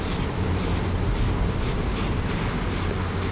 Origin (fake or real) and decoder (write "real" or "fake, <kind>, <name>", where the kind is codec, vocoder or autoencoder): real